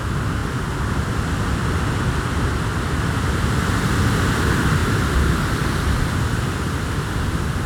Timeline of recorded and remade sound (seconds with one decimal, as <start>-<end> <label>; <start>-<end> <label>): 0.0-0.4 recorded; 0.4-0.9 remade; 0.9-4.8 recorded; 4.8-5.9 remade; 5.9-7.7 recorded

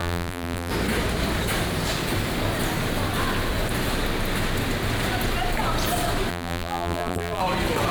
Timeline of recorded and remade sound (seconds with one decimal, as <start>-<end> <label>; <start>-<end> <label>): 0.0-0.7 remade; 0.7-6.3 recorded; 6.3-7.4 remade; 7.4-7.9 recorded